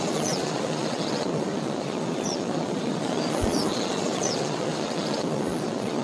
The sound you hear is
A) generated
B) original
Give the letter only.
A